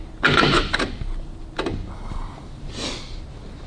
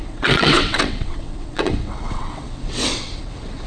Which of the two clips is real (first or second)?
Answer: first